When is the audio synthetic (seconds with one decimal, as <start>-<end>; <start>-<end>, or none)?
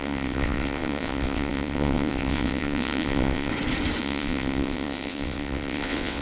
0.0-3.5; 4.0-6.2